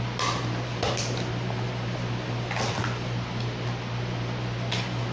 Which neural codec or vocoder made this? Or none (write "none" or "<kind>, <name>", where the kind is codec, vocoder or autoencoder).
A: none